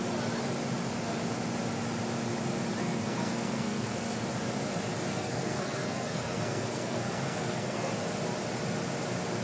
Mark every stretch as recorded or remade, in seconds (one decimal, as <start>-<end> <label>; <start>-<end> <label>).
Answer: 0.0-2.8 recorded; 2.8-4.2 remade; 4.2-5.1 recorded; 5.1-7.9 remade; 7.9-9.4 recorded